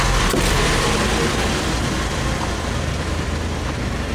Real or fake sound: real